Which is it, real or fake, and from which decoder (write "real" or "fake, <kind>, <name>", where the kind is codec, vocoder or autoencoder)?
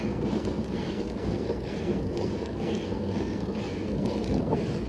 fake, codec, SNAC